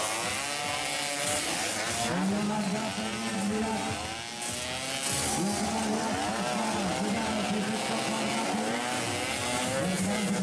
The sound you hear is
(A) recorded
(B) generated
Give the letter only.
A